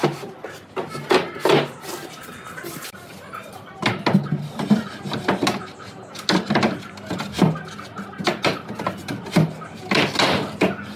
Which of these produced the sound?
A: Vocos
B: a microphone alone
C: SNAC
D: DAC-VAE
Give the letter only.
B